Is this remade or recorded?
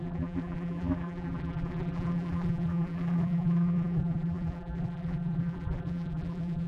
remade